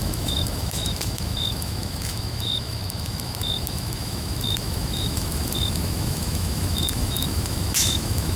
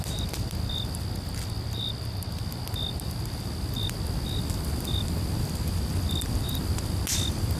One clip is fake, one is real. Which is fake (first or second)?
first